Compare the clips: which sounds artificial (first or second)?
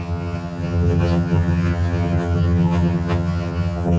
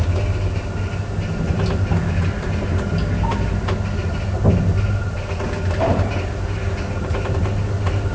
first